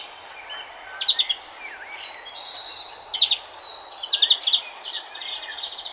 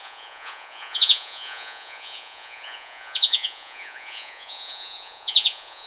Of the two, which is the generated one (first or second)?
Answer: second